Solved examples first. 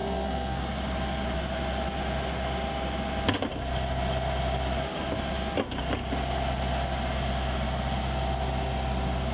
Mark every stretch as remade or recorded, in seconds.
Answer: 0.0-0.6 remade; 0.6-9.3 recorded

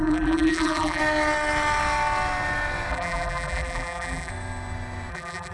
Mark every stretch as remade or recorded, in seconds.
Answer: 0.0-1.0 remade; 1.0-2.9 recorded; 2.9-4.3 remade; 4.3-5.1 recorded; 5.1-5.5 remade

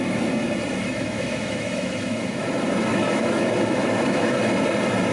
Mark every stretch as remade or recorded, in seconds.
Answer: 0.0-0.8 recorded; 0.8-2.5 remade; 2.5-2.9 recorded; 2.9-4.4 remade; 4.4-5.1 recorded

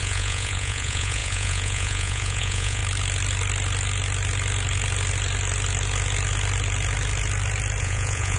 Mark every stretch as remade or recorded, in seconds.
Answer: 0.0-2.8 remade; 2.8-7.8 recorded; 7.8-8.4 remade